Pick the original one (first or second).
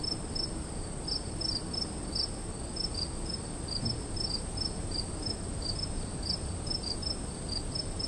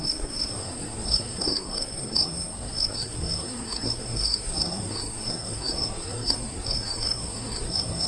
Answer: first